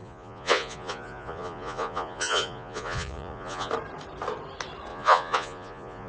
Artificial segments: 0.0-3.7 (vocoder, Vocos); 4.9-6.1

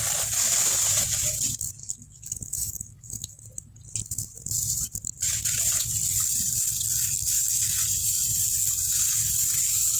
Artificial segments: 1.8-3.4 (codec, DAC)

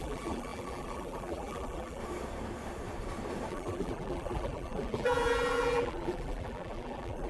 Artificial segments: 0.0-2.0 (vocoder, BigVGAN v2); 3.5-7.3

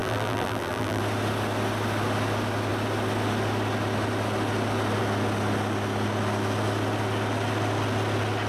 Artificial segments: 0.0-1.0 (vocoder, BigVGAN v2)